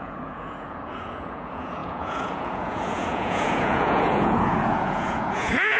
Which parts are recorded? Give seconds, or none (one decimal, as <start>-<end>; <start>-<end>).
none